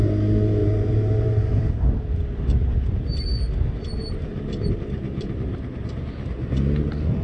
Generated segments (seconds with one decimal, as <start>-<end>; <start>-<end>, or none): 0.6-1.7; 4.0-6.0